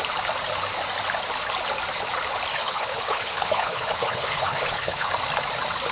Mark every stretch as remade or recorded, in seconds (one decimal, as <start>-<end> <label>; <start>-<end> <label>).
0.0-2.5 recorded; 2.5-5.1 remade; 5.1-5.9 recorded